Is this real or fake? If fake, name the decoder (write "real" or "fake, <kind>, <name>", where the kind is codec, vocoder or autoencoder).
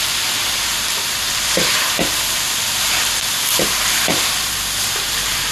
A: fake, vocoder, BigVGAN v2